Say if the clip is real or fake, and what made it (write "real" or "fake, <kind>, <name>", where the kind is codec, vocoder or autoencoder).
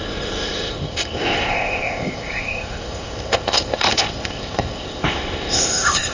fake, codec, ZipCodec